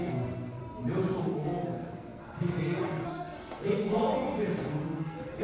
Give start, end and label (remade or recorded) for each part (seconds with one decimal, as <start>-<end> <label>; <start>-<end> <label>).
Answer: 0.0-0.6 remade; 0.6-1.2 recorded; 1.2-5.4 remade